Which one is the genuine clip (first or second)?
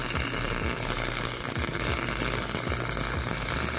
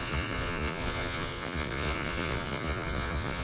first